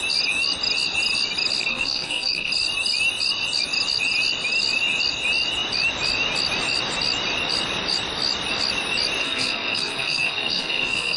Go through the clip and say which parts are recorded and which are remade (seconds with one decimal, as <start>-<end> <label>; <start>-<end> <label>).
0.0-1.7 recorded; 1.7-2.5 remade; 2.5-9.2 recorded; 9.2-11.2 remade